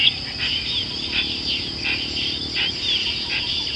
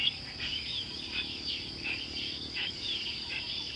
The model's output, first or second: second